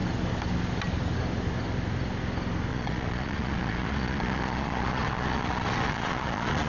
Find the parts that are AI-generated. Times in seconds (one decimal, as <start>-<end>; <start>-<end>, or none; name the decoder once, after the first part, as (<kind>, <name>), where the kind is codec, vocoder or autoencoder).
2.7-6.7 (vocoder, Vocos)